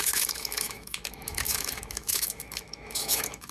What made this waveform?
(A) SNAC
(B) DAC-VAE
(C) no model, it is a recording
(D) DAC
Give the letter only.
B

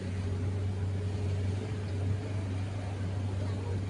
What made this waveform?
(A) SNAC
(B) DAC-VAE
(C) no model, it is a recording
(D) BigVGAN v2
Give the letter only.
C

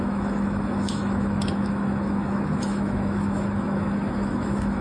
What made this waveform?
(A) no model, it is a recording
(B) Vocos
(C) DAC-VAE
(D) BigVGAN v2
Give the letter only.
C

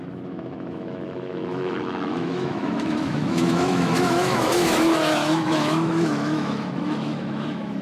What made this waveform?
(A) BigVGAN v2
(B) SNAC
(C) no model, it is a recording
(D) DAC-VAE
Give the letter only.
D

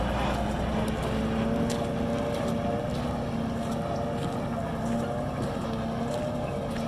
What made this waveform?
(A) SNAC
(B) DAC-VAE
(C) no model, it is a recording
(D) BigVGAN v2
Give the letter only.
C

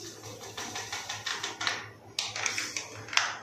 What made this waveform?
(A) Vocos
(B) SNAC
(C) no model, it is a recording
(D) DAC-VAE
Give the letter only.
C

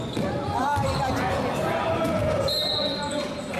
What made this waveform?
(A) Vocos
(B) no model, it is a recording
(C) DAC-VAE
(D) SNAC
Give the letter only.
B